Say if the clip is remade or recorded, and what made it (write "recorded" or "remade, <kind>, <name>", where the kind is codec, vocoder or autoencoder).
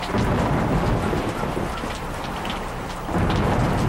recorded